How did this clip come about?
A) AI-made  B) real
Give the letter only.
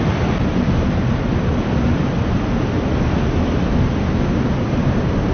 B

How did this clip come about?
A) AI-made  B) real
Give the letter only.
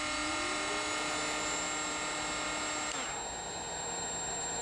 B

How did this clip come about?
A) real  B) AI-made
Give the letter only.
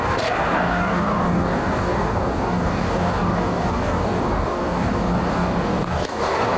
B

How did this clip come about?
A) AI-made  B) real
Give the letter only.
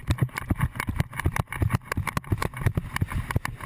B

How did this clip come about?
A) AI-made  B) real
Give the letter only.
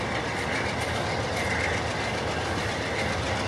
B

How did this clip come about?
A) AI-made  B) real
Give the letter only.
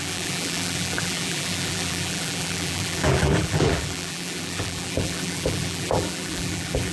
A